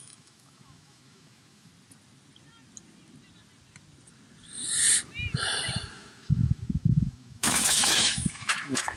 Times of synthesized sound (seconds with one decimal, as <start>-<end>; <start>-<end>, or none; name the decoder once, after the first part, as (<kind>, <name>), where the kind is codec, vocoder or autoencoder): 0.0-1.7 (autoencoder, DAC-VAE); 5.9-9.0